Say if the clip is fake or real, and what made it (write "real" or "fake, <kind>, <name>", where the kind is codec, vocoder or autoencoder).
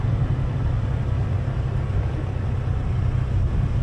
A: real